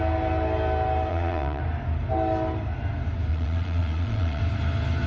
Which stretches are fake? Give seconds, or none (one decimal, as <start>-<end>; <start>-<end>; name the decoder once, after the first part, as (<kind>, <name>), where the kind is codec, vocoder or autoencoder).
1.1-1.6 (vocoder, Vocos); 3.3-4.4